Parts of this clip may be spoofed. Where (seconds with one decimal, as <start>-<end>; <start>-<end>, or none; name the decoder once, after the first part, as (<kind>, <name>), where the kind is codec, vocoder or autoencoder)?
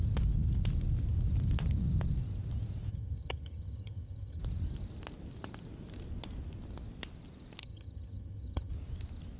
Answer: 2.9-4.4 (vocoder, HiFi-GAN); 7.6-8.7